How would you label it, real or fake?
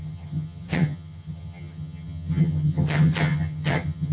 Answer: fake